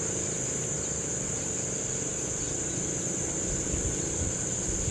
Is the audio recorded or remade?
recorded